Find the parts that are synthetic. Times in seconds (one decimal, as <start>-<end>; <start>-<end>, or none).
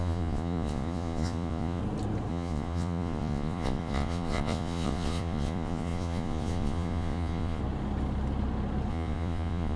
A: 0.0-1.8; 2.3-7.6; 8.9-9.8